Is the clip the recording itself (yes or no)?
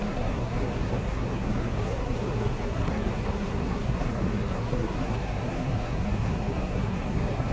no